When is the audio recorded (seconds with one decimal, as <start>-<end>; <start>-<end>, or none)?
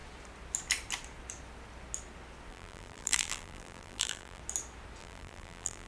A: 0.0-2.5; 4.4-5.0